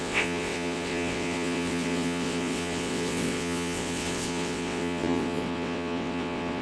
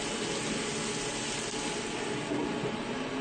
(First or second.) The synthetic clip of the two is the first